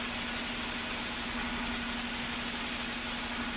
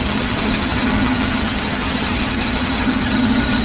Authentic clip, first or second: first